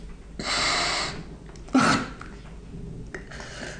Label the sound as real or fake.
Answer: real